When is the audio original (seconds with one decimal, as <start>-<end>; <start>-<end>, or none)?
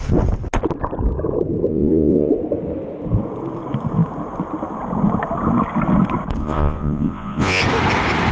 0.0-1.7; 2.3-6.4; 7.6-8.3